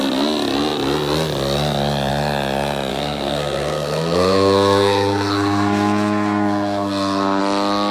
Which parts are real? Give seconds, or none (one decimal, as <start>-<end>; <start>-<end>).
0.0-2.9; 7.4-7.9